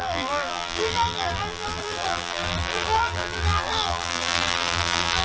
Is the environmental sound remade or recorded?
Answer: remade